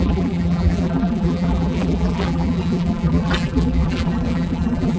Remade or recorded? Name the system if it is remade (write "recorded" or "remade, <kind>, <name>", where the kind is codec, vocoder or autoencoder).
remade, vocoder, BigVGAN v2